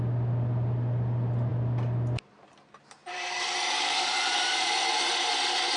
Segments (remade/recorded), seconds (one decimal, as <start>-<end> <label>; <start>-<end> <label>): 0.0-3.0 recorded; 3.0-4.8 remade; 4.8-5.8 recorded